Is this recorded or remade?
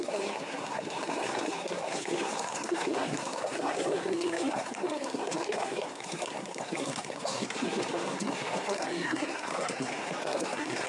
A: remade